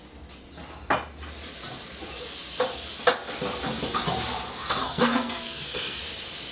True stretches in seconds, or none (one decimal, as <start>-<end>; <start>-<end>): 0.0-4.8; 6.0-6.5